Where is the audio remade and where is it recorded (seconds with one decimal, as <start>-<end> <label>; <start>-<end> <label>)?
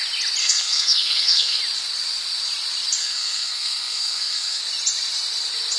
0.0-0.4 recorded; 0.4-1.6 remade; 1.6-3.0 recorded; 3.0-4.6 remade; 4.6-5.8 recorded